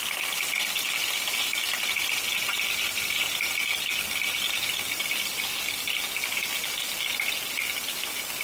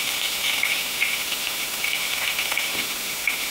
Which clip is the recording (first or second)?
first